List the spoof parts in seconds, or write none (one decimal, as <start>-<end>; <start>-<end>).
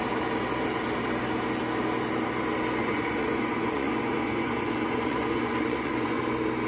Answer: 2.8-6.2